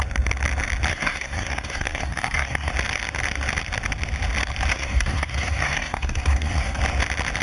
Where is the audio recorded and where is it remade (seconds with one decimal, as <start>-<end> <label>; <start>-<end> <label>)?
0.0-0.9 recorded; 0.9-2.7 remade; 2.7-4.7 recorded; 4.7-6.8 remade; 6.8-7.4 recorded